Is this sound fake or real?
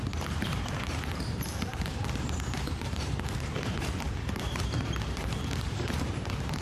fake